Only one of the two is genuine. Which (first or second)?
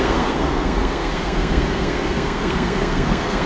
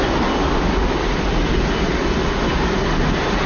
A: second